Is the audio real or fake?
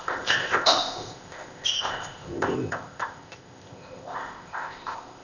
fake